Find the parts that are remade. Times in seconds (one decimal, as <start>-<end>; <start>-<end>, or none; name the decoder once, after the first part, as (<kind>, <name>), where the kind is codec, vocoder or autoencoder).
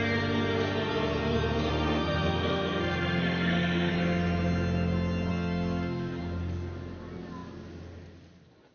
1.7-3.9 (codec, SNAC); 5.3-6.2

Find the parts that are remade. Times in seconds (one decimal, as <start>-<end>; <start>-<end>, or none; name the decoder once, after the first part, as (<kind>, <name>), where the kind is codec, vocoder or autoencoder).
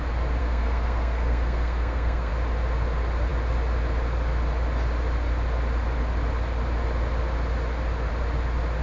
0.4-2.3 (codec, SNAC)